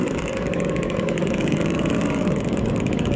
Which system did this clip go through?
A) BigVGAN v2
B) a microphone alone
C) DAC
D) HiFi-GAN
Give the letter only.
C